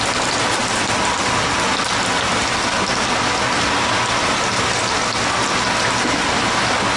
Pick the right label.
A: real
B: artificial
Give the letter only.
A